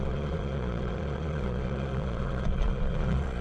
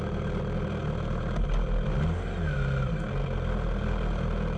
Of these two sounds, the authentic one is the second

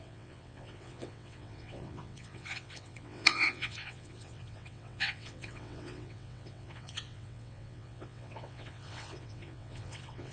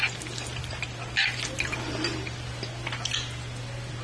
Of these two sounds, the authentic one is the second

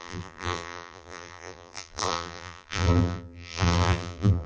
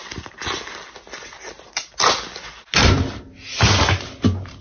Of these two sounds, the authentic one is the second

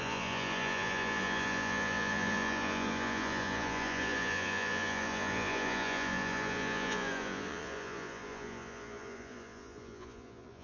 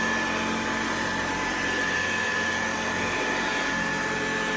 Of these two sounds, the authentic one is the second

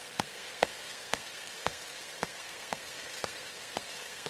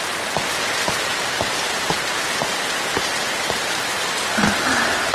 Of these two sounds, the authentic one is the second